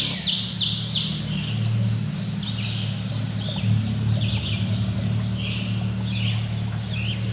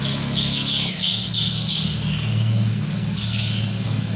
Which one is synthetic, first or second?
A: second